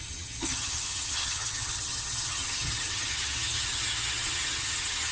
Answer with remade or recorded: remade